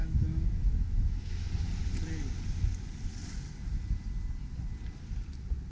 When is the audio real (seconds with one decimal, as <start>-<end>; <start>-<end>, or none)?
1.5-5.7